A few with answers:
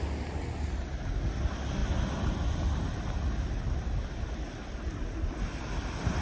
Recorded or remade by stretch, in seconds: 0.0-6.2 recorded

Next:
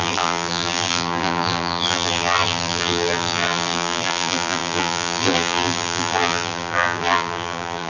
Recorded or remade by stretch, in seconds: 0.0-7.9 remade